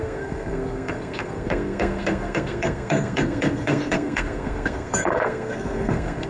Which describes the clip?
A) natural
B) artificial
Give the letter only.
B